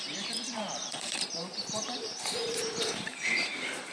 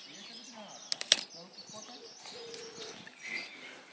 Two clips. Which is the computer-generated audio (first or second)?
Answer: first